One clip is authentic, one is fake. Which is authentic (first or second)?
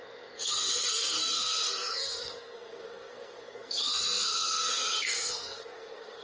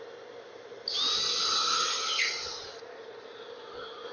second